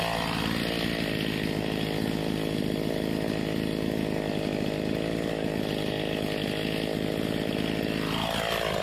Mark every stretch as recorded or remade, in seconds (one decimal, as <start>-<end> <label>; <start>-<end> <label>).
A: 0.0-8.8 recorded